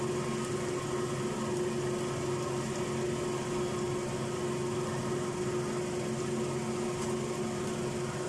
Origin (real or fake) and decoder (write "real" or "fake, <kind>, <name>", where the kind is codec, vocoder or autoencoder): real